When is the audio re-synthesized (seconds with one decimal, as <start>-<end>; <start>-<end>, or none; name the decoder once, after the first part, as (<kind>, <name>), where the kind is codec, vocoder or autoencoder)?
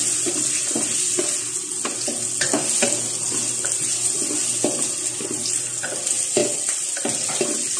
none